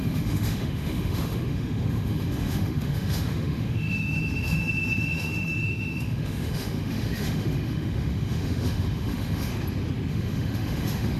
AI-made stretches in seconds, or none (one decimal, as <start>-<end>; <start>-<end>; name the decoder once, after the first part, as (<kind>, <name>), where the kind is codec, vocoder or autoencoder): 0.0-9.5 (autoencoder, DAC-VAE); 10.1-11.2